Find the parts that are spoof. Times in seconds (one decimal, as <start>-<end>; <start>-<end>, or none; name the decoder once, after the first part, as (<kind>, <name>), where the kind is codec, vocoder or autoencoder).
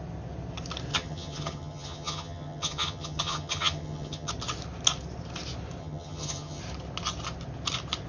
0.9-4.3 (vocoder, HiFi-GAN); 5.8-6.6